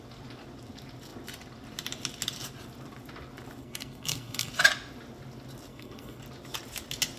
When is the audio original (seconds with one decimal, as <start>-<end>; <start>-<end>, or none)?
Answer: 0.0-3.6; 4.5-5.7; 6.2-7.2